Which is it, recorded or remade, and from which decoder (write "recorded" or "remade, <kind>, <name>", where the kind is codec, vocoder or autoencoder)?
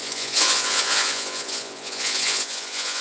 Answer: remade, vocoder, Vocos